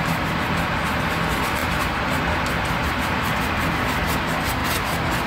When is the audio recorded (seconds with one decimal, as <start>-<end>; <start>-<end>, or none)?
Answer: 0.0-5.3